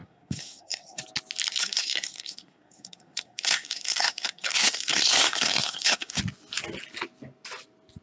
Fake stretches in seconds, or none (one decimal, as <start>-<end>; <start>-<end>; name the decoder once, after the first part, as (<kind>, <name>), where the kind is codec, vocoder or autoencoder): 0.0-1.0 (codec, SNAC); 1.6-6.2